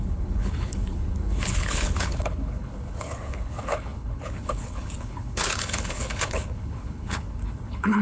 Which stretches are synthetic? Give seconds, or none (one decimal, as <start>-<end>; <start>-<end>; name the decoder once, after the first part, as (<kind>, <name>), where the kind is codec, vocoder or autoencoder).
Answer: 0.0-8.0 (codec, HILCodec)